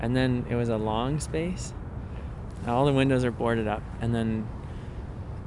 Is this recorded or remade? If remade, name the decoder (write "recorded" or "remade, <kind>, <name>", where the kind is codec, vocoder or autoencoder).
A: recorded